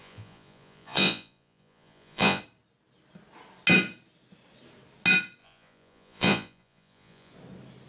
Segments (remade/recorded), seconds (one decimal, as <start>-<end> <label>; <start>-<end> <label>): 0.0-2.4 remade; 2.4-5.4 recorded; 5.4-7.3 remade; 7.3-7.9 recorded